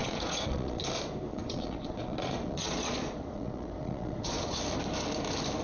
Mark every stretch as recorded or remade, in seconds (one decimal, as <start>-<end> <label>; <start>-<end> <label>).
0.0-0.8 remade; 0.8-1.3 recorded; 1.3-4.6 remade; 4.6-5.6 recorded